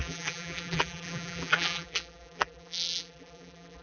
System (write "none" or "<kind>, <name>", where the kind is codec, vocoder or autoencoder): vocoder, BigVGAN v2